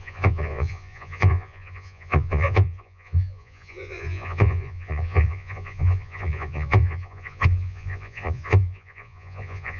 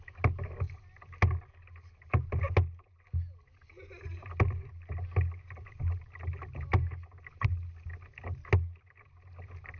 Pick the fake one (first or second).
first